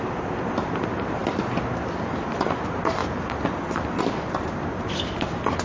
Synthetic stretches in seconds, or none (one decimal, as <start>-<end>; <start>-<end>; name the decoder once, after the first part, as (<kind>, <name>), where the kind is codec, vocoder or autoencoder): 0.0-1.2 (vocoder, BigVGAN v2); 2.3-3.0; 4.0-5.6